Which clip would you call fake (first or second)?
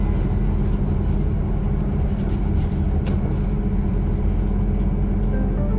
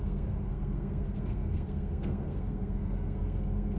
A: second